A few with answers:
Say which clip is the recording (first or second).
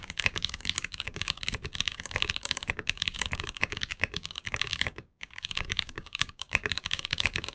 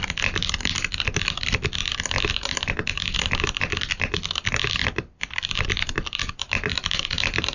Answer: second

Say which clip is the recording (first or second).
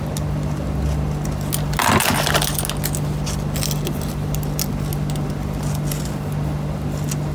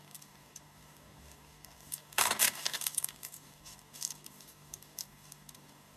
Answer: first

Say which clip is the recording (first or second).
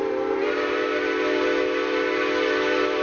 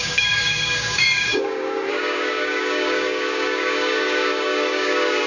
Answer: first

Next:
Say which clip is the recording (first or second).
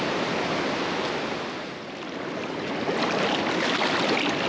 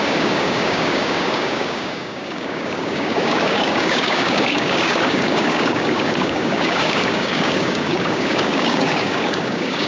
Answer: first